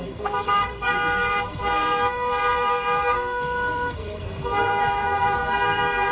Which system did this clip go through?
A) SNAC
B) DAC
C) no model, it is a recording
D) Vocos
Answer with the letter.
A